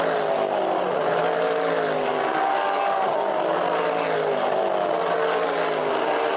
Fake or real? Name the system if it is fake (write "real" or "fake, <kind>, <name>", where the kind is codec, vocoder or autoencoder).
real